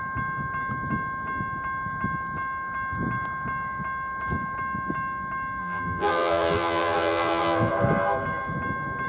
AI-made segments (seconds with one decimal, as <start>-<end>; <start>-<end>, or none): 5.6-7.7

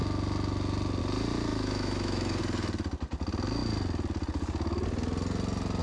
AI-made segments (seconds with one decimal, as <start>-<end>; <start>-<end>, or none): 1.5-2.4

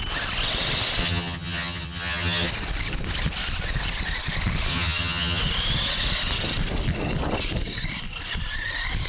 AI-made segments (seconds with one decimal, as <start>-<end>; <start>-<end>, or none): 1.0-2.5; 4.7-5.4

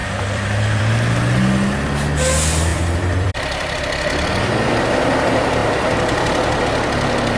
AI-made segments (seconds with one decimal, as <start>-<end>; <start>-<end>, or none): 0.0-0.8; 2.7-3.8; 5.6-6.6